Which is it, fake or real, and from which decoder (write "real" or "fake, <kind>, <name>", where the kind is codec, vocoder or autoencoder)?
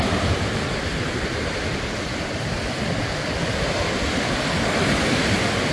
real